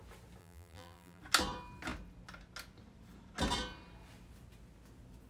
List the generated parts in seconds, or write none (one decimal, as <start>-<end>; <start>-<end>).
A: 0.4-1.2